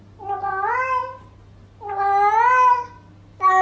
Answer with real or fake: real